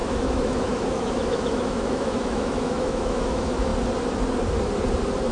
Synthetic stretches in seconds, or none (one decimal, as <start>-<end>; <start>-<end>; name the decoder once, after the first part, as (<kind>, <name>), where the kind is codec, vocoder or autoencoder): 0.0-3.7 (autoencoder, DAC-VAE)